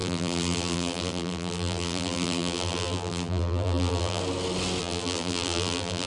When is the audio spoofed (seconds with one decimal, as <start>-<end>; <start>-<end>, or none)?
0.0-4.2; 4.8-6.1